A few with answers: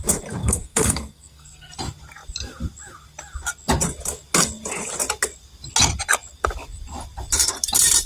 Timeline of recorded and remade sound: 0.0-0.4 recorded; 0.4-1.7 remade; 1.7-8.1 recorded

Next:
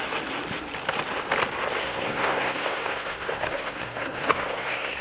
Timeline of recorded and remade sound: 0.0-1.8 recorded; 1.8-5.0 remade

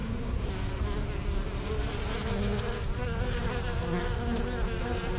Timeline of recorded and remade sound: 0.0-0.5 remade; 0.5-5.2 recorded

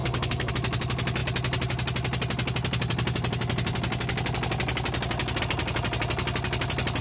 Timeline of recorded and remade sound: 0.0-0.5 remade; 0.5-7.0 recorded